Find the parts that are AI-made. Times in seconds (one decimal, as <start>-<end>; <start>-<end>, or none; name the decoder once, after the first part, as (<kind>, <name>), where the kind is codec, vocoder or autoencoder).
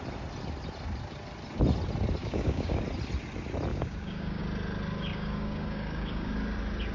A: 2.2-2.8 (codec, DAC); 3.7-4.4; 5.1-6.3